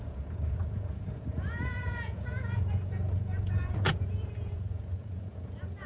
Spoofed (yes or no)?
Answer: yes